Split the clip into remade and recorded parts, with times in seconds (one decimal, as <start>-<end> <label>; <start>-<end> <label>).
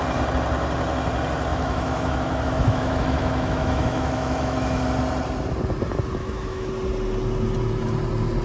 0.0-1.5 recorded; 1.5-4.8 remade; 4.8-6.2 recorded; 6.2-6.7 remade; 6.7-8.4 recorded